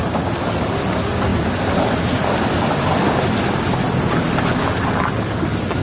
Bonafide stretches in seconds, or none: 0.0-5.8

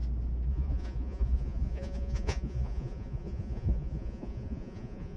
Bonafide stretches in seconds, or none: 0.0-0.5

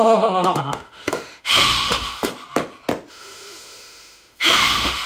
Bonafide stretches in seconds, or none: 2.3-3.1